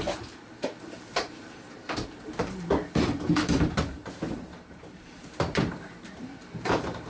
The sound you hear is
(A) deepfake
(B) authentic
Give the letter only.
A